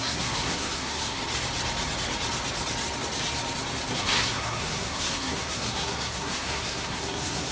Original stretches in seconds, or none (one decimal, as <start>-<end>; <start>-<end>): 1.2-3.9